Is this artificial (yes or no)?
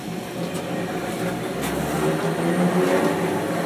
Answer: no